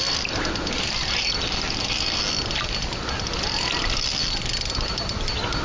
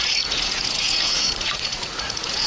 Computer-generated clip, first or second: second